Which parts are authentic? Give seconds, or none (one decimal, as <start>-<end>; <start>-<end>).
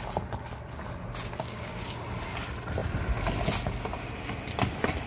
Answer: 0.0-1.2; 2.0-5.1